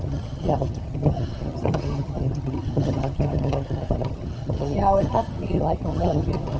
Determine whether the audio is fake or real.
fake